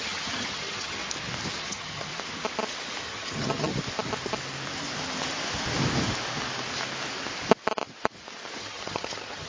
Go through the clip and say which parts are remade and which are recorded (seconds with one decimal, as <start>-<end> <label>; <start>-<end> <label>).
0.0-1.0 remade; 1.0-1.6 recorded; 1.6-2.1 remade; 2.1-3.0 recorded; 3.0-3.7 remade; 3.7-8.6 recorded; 8.6-9.5 remade